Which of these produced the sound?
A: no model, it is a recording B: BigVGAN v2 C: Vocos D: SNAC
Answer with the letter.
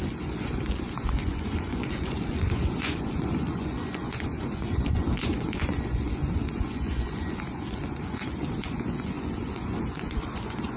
C